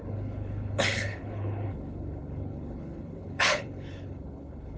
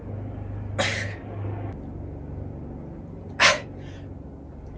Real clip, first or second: second